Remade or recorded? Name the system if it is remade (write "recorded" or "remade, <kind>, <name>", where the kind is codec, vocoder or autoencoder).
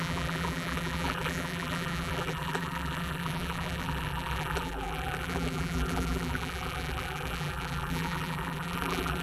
remade, vocoder, BigVGAN v2